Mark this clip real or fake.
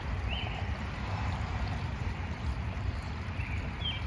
fake